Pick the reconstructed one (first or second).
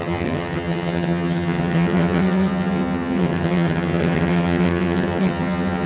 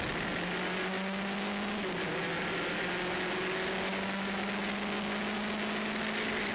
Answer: first